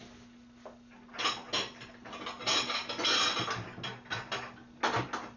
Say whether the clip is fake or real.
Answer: real